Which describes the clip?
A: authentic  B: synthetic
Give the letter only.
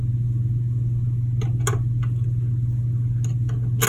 A